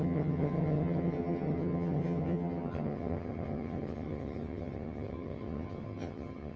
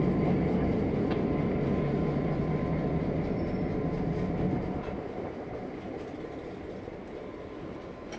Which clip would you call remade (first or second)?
first